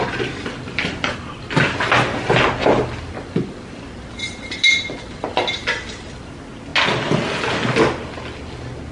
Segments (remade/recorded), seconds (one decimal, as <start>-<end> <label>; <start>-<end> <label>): 0.0-8.9 recorded